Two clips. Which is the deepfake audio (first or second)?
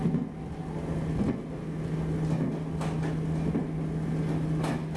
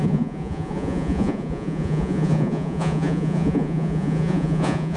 second